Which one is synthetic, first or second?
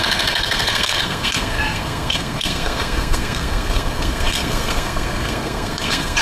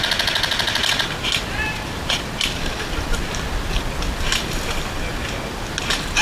first